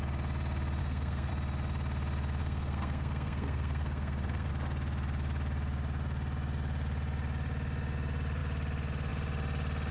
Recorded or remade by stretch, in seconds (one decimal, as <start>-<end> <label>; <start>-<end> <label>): 0.0-0.8 recorded; 0.8-1.3 remade; 1.3-2.4 recorded; 2.4-4.5 remade; 4.5-9.9 recorded